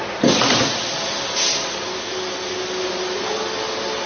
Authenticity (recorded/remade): recorded